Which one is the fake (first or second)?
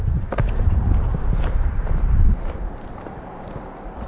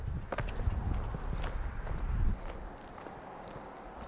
first